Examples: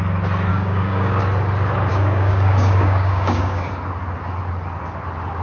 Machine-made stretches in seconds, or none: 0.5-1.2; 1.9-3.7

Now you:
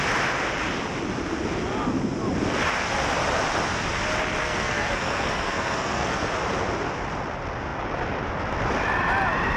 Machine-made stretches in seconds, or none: 4.4-6.3

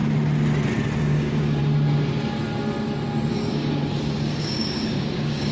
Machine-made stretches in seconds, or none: 1.0-1.6; 3.3-3.8; 4.4-5.5

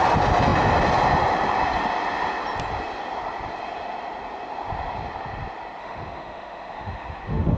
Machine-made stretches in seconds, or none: 5.8-7.6

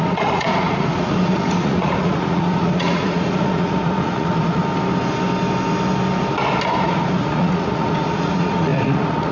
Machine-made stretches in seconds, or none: 0.0-4.6; 6.8-9.3

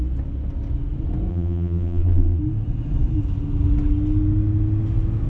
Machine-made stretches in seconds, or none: 1.3-2.4